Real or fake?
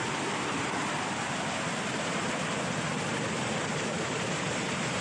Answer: real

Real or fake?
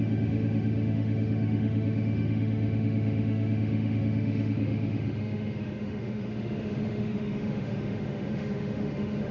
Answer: fake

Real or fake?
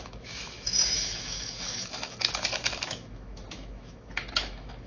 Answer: fake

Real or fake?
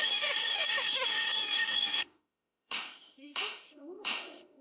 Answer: fake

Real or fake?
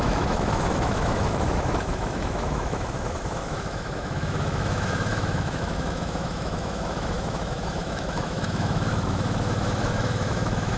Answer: fake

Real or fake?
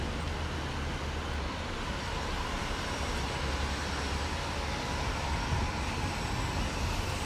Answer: real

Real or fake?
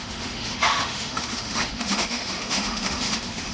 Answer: fake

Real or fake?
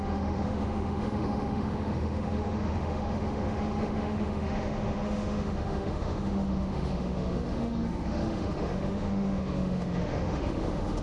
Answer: fake